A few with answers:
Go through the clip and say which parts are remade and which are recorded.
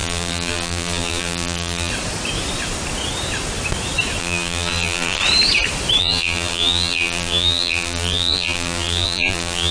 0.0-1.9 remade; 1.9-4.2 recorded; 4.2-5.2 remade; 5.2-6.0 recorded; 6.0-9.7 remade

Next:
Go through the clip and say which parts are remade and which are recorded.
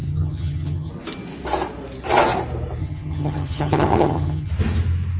0.0-0.9 remade; 0.9-2.8 recorded; 2.8-4.5 remade; 4.5-5.2 recorded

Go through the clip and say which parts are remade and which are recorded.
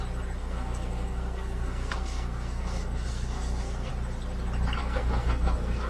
0.0-0.4 recorded; 0.4-3.9 remade; 3.9-4.8 recorded; 4.8-5.9 remade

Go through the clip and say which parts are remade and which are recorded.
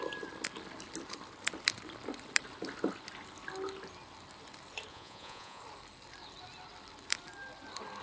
0.0-4.9 recorded; 4.9-5.6 remade; 5.6-8.0 recorded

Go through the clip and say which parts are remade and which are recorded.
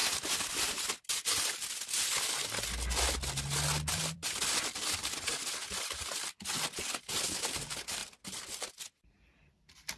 0.0-3.9 recorded; 3.9-10.0 remade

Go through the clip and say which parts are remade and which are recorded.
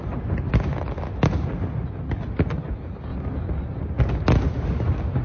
0.0-5.2 recorded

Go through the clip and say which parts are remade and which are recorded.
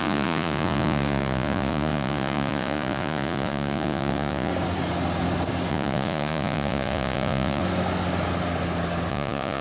0.0-4.5 remade; 4.5-5.7 recorded; 5.7-7.6 remade; 7.6-9.1 recorded; 9.1-9.6 remade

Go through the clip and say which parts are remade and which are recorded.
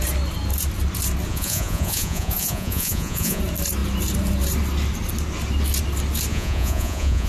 0.0-1.3 recorded; 1.3-3.4 remade; 3.4-6.3 recorded; 6.3-7.3 remade